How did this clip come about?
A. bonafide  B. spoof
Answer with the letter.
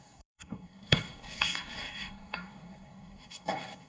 B